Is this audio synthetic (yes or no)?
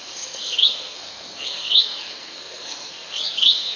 yes